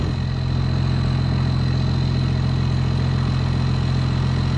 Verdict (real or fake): real